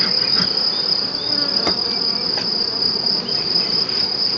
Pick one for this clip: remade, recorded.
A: recorded